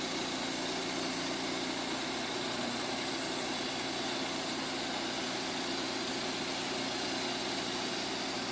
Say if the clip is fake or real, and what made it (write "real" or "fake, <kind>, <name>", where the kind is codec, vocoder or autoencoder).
real